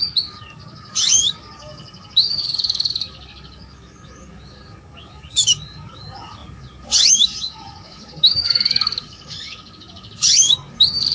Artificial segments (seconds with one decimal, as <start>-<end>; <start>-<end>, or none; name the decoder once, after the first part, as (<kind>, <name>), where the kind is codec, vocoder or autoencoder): 0.0-11.1 (codec, DAC)